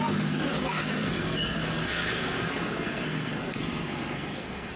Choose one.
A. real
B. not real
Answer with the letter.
B